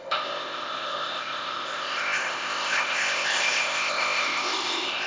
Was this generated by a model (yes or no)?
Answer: yes